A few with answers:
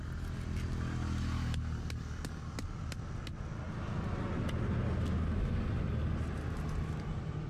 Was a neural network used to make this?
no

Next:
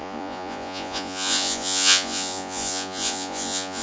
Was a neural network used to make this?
yes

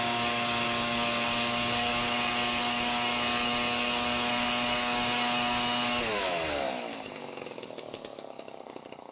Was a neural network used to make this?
yes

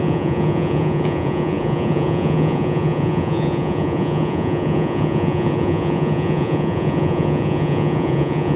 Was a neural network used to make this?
yes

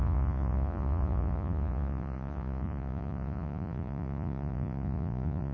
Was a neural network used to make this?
yes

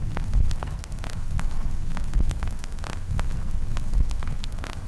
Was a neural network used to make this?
yes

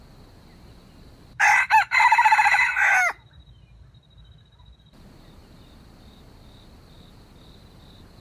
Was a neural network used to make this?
no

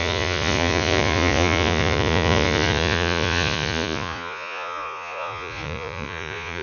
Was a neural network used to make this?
yes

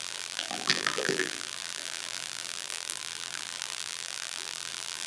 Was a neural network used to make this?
yes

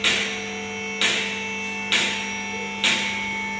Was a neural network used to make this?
no